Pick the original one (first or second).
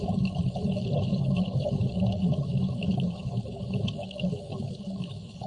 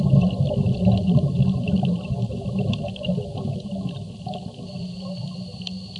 second